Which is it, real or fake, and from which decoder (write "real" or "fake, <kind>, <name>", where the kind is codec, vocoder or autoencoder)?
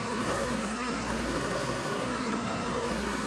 fake, codec, SNAC